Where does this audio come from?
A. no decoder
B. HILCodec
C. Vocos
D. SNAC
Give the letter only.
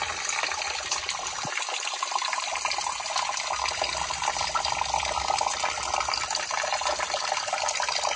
A